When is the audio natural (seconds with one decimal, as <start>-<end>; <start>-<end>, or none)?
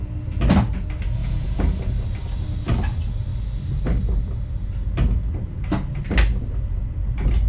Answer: 0.0-1.2; 1.8-7.5